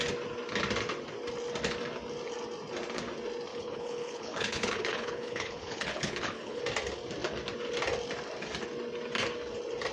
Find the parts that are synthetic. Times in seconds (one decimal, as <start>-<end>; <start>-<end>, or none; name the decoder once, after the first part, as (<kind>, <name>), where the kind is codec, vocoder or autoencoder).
3.5-6.6 (codec, HILCodec)